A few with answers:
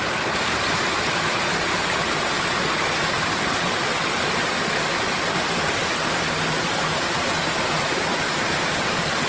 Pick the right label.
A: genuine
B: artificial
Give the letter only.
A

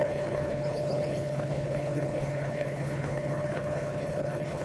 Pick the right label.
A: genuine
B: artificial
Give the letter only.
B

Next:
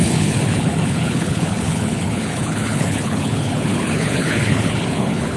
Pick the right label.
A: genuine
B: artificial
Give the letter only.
B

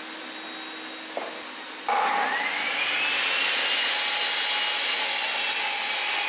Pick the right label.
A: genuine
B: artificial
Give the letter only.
A